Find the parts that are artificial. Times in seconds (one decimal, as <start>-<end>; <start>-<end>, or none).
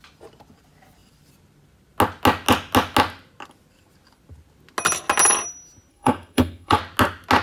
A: 5.9-6.8